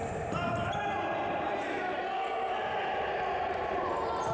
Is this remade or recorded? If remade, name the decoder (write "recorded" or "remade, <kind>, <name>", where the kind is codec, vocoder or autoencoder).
recorded